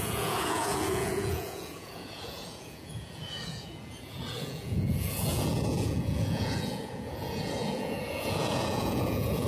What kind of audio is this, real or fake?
fake